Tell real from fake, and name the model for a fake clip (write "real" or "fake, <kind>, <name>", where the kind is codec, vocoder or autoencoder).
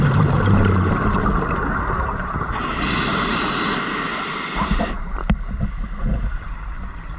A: real